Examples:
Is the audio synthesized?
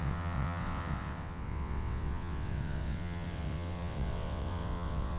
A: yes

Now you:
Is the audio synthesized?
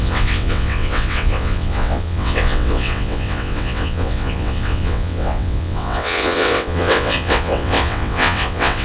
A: yes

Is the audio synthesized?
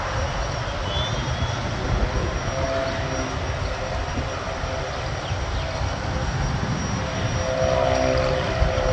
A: no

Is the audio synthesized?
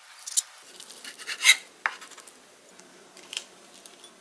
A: no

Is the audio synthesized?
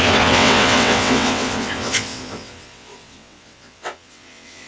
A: yes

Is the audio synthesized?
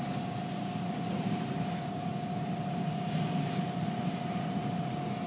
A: no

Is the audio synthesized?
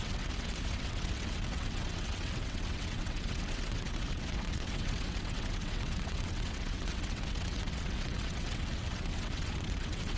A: yes